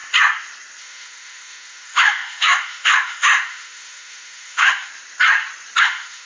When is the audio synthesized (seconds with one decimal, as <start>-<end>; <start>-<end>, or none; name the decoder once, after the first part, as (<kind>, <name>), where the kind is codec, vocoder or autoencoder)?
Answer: 0.8-4.9 (autoencoder, DAC-VAE); 5.8-6.3